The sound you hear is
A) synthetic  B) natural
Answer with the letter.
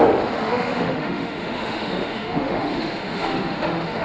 A